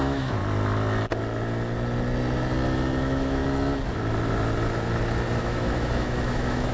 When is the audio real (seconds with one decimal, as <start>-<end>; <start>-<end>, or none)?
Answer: 0.4-3.0; 3.4-5.4